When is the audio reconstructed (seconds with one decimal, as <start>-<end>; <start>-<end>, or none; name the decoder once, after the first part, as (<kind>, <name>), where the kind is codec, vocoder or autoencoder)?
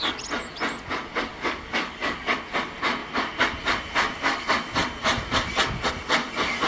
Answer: 1.3-2.4 (codec, DAC)